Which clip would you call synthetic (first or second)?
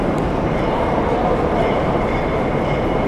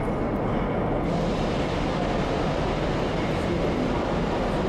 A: first